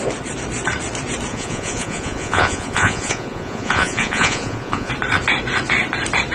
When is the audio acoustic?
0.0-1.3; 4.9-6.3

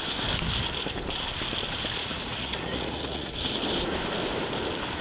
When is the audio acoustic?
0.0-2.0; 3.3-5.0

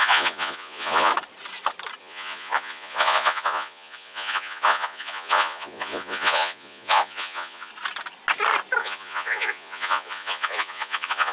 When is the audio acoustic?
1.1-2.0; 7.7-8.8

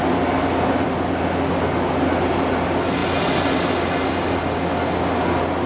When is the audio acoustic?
0.0-5.7

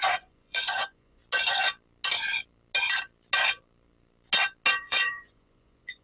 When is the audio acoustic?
1.2-4.8